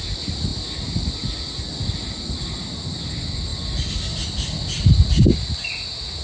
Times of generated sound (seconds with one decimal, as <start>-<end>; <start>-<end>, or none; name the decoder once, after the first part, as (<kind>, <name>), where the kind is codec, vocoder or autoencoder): none